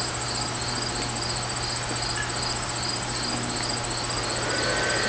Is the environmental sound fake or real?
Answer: real